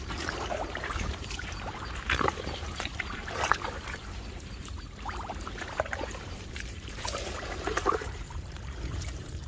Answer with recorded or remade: remade